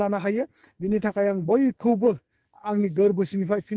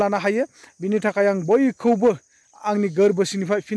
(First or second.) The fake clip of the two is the first